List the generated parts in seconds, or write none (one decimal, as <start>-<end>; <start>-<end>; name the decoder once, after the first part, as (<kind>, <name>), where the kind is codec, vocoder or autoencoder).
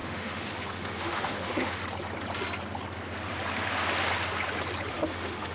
0.0-1.8 (autoencoder, DAC-VAE); 4.9-5.5